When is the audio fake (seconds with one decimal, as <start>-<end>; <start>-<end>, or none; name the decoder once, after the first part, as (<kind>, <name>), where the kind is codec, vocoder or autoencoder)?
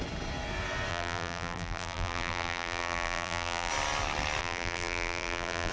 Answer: 0.9-3.7 (vocoder, BigVGAN v2); 4.4-5.7